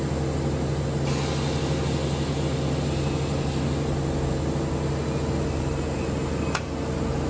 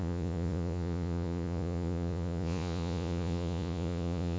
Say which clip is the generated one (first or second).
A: second